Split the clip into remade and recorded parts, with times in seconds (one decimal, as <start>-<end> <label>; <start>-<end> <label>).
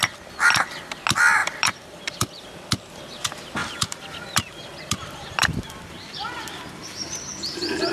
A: 0.0-1.4 recorded; 1.4-2.4 remade; 2.4-3.6 recorded; 3.6-7.3 remade; 7.3-7.9 recorded